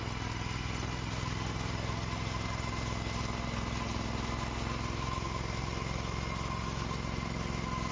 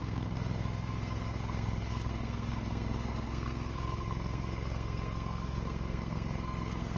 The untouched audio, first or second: first